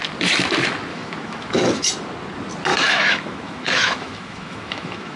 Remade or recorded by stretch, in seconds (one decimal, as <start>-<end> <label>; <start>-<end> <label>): 0.0-0.9 recorded; 0.9-1.8 remade; 1.8-2.7 recorded; 2.7-5.2 remade